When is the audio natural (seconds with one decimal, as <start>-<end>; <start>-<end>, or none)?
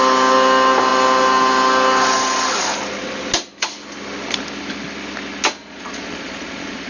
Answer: 0.0-5.6